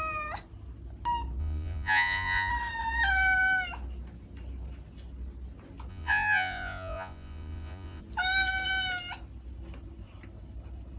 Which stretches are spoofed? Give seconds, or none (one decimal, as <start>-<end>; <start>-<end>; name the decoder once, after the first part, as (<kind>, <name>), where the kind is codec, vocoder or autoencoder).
1.4-2.5 (vocoder, Vocos); 5.9-8.0